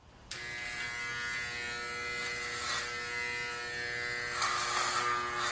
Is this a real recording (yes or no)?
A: yes